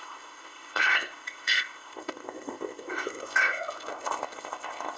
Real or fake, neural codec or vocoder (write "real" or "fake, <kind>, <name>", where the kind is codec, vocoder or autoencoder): fake, codec, ZipCodec